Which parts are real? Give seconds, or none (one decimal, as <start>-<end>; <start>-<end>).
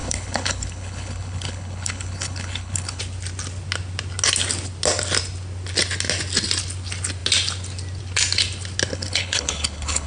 3.0-8.9